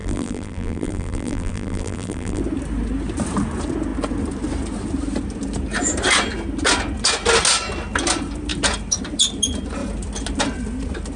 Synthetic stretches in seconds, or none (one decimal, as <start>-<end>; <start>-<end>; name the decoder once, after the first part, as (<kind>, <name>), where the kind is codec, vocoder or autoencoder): 0.0-2.4 (vocoder, BigVGAN v2)